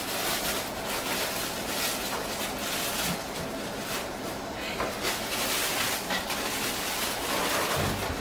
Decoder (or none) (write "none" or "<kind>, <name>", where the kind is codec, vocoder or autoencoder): none